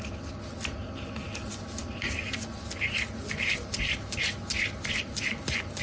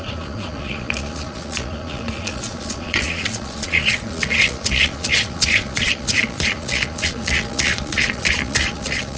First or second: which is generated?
second